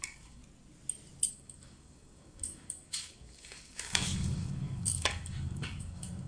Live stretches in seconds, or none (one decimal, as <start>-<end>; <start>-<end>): 0.4-1.3